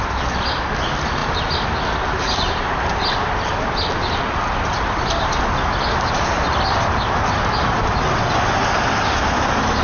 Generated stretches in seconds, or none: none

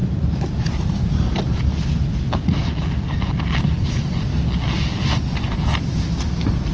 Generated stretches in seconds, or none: none

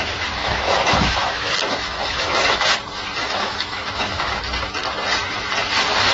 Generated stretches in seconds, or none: 0.4-2.7 (autoencoder, DAC-VAE); 3.2-4.4

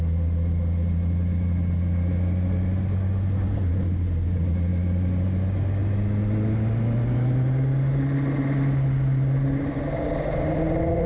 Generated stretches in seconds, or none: none

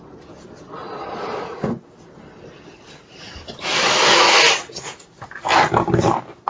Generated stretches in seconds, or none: 3.9-4.4 (autoencoder, DAC-VAE)

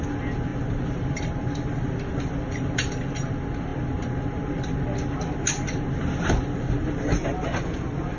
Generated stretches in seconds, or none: none

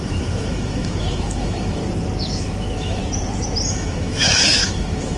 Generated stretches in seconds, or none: 0.0-1.8 (autoencoder, DAC-VAE); 2.4-3.0; 3.7-5.2